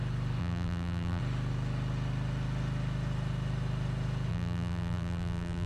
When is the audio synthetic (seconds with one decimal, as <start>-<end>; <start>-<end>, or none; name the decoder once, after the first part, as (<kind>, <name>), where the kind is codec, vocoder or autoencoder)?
0.4-1.2 (vocoder, BigVGAN v2); 4.3-5.7